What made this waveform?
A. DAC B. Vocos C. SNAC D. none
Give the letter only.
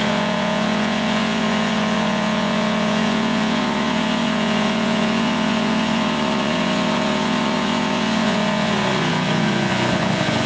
B